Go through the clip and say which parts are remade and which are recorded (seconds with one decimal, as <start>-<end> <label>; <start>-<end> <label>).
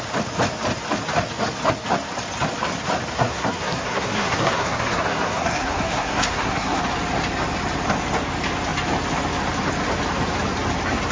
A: 0.0-3.1 recorded; 3.1-6.8 remade; 6.8-11.1 recorded